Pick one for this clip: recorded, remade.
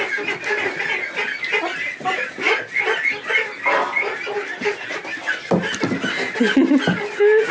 recorded